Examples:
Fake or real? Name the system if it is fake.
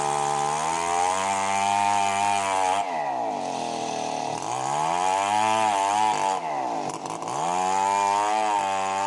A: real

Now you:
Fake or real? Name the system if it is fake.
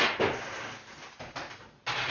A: real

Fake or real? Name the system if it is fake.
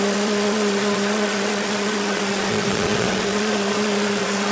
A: fake, vocoder, Vocos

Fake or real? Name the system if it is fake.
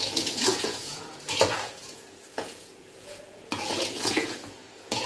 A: fake, vocoder, Vocos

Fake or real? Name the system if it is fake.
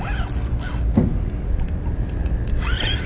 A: real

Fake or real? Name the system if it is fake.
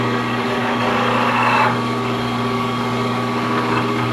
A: fake, codec, DAC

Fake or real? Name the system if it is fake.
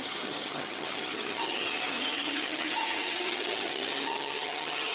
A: fake, vocoder, HiFi-GAN